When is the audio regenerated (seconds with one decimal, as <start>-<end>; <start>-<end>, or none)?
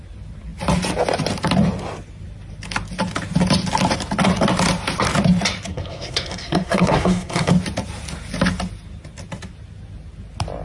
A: 5.7-7.5